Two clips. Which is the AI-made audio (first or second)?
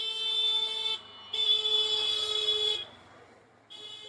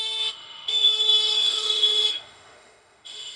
second